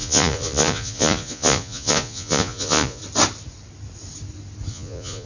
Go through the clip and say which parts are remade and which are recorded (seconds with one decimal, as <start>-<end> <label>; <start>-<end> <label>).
0.0-3.0 remade; 3.0-4.7 recorded; 4.7-5.3 remade